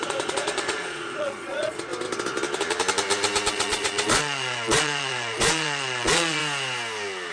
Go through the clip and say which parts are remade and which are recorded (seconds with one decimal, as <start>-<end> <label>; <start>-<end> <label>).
0.0-1.9 remade; 1.9-3.5 recorded; 3.5-6.4 remade; 6.4-7.3 recorded